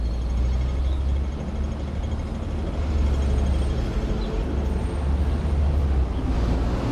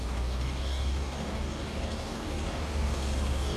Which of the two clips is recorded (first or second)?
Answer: first